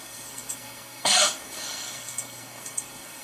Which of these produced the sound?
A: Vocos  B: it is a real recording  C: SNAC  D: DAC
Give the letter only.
C